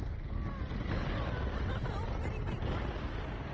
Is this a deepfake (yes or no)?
no